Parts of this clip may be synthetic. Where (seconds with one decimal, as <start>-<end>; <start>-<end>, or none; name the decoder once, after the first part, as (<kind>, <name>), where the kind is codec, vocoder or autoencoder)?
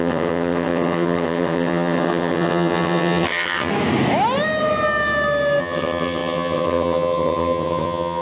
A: 0.0-3.7 (vocoder, HiFi-GAN); 5.6-8.2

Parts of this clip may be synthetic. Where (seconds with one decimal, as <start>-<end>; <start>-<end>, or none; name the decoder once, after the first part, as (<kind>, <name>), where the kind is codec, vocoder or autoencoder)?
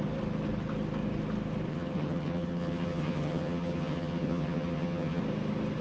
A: 1.7-5.2 (vocoder, HiFi-GAN)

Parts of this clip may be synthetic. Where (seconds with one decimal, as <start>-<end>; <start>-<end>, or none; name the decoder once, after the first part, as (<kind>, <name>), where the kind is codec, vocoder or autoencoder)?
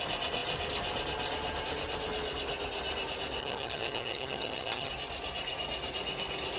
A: 3.4-4.9 (vocoder, HiFi-GAN)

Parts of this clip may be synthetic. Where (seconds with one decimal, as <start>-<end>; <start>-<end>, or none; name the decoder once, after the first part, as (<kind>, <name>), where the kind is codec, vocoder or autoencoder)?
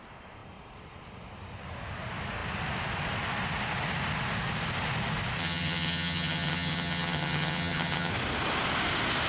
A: 5.4-8.1 (vocoder, HiFi-GAN)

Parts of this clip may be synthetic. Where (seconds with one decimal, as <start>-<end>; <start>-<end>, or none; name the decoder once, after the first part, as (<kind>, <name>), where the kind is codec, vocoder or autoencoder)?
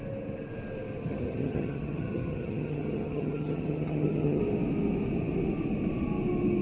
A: 1.1-4.4 (vocoder, HiFi-GAN)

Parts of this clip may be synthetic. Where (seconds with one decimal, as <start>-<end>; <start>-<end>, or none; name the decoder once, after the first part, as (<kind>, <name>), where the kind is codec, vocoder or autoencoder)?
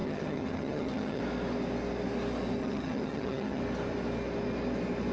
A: 0.0-1.2 (vocoder, HiFi-GAN); 2.6-3.6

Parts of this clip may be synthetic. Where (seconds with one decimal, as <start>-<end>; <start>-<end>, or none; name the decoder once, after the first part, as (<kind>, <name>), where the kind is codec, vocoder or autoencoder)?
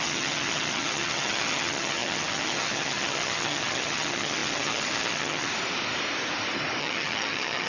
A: 0.0-5.5 (vocoder, HiFi-GAN); 6.8-7.7